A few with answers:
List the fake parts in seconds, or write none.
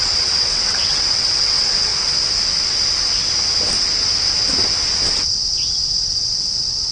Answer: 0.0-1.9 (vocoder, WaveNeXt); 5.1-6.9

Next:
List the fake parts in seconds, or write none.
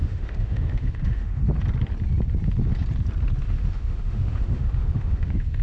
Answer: 0.0-1.4 (autoencoder, DAC-VAE); 3.4-5.6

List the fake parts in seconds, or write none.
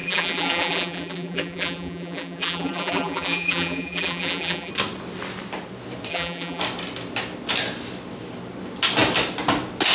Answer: 0.0-4.7 (vocoder, BigVGAN v2); 6.1-6.6